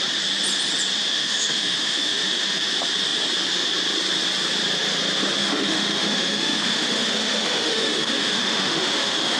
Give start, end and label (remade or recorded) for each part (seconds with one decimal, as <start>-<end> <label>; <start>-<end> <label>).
0.0-1.0 recorded; 1.0-2.6 remade; 2.6-5.4 recorded; 5.4-9.4 remade